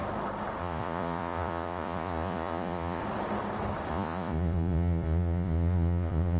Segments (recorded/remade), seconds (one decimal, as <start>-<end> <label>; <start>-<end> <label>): 0.0-0.6 recorded; 0.6-3.0 remade; 3.0-3.9 recorded; 3.9-6.4 remade